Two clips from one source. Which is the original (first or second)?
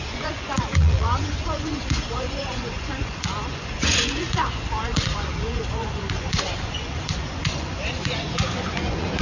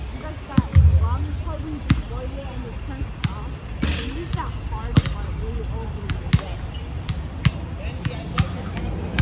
second